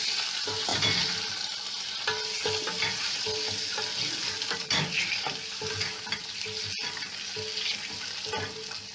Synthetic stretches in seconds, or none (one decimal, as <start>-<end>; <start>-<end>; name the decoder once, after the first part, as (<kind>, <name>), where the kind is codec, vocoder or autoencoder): none